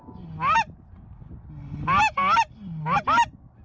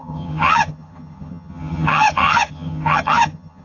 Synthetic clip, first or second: second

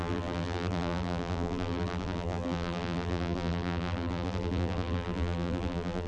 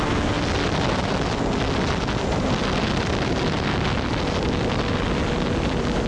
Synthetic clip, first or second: first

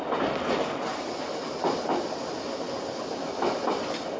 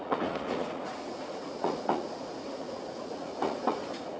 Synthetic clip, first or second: second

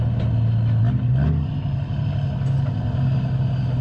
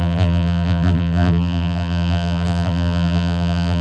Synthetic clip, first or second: second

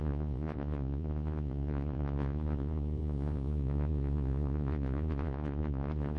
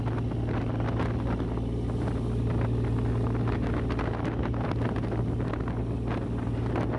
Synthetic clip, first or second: first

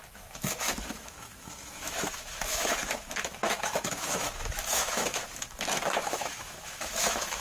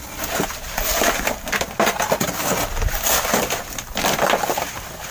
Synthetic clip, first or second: first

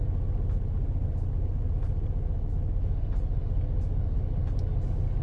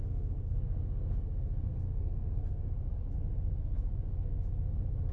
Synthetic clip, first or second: second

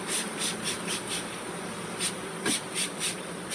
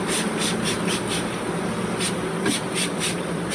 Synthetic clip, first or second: first